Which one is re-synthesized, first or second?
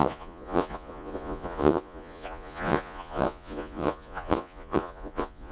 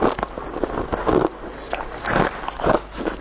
first